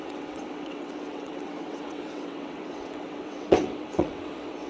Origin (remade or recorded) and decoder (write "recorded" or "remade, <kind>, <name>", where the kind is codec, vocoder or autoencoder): remade, vocoder, WaveNeXt